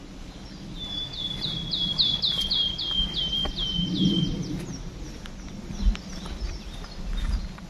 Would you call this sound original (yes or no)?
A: yes